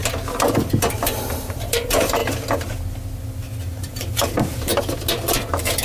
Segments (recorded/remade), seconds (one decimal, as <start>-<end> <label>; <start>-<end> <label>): 0.0-1.3 recorded; 1.3-2.2 remade; 2.2-3.8 recorded; 3.8-4.7 remade; 4.7-5.8 recorded